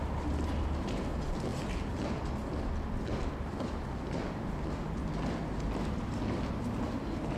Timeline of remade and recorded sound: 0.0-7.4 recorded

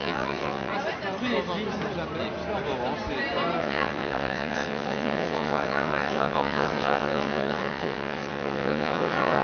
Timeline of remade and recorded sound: 0.0-0.7 remade; 0.7-3.6 recorded; 3.6-9.4 remade